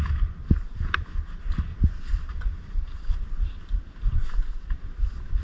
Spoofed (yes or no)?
no